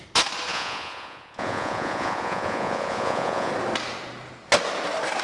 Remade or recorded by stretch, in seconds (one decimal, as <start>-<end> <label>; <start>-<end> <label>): 0.0-0.5 recorded; 0.5-3.5 remade; 3.5-5.2 recorded